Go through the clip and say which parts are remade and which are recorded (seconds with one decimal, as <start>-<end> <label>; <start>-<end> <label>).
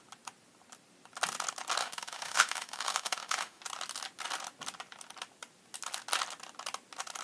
0.0-1.8 recorded; 1.8-3.6 remade; 3.6-7.2 recorded